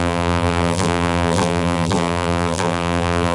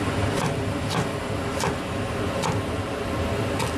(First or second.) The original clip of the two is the second